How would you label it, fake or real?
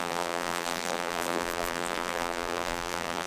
fake